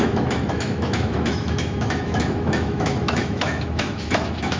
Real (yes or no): no